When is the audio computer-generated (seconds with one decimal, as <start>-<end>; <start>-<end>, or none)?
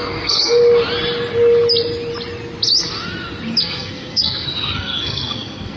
0.0-0.6; 3.6-5.8